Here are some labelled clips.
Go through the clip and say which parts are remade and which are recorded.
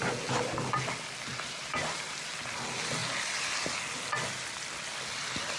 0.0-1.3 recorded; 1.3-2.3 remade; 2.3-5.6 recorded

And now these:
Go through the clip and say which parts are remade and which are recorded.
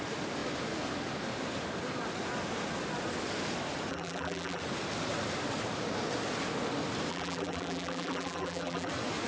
0.0-3.9 recorded; 3.9-4.6 remade; 4.6-7.1 recorded; 7.1-8.9 remade; 8.9-9.3 recorded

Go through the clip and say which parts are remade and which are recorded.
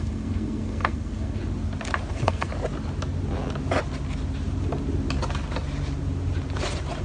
0.0-1.4 remade; 1.4-2.1 recorded; 2.1-2.5 remade; 2.5-7.0 recorded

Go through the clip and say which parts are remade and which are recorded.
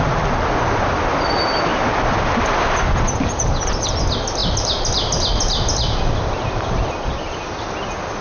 0.0-1.7 recorded; 1.7-4.0 remade; 4.0-4.4 recorded; 4.4-6.7 remade; 6.7-8.2 recorded